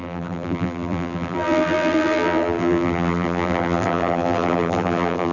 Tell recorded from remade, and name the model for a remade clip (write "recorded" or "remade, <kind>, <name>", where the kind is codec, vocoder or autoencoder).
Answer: remade, vocoder, BigVGAN v2